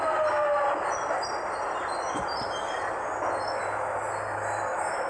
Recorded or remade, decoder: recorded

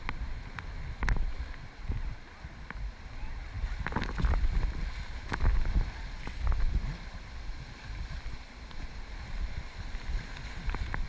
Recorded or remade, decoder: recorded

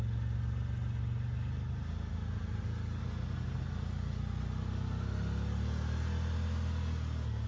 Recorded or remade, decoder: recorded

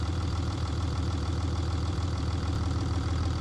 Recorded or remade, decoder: remade, vocoder, BigVGAN v2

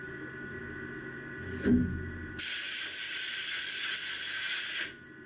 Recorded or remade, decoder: recorded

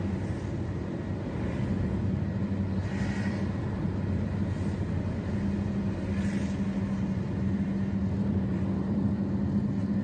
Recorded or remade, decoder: recorded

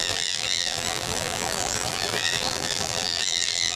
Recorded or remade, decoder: remade, vocoder, BigVGAN v2